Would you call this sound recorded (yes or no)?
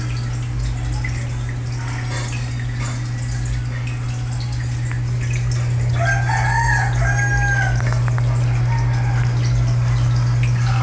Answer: yes